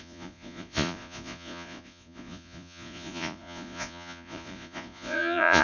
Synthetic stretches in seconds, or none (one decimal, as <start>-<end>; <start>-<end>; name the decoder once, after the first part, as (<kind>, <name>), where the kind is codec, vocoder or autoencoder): 0.0-5.6 (vocoder, Vocos)